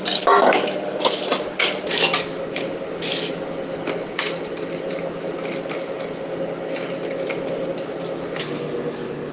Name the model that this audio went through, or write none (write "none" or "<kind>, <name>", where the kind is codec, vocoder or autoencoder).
none